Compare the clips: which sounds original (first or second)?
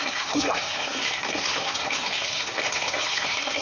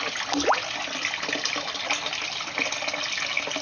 second